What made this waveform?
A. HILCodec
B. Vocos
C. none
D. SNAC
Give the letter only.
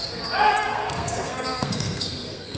D